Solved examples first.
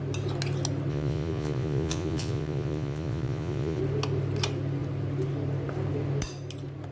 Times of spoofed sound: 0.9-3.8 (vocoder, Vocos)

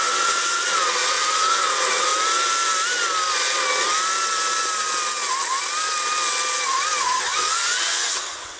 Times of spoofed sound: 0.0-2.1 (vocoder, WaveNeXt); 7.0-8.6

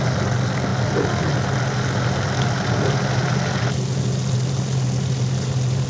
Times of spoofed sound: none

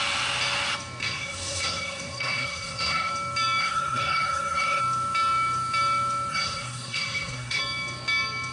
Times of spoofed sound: 1.0-3.1 (codec, SNAC); 3.6-4.8; 6.3-7.6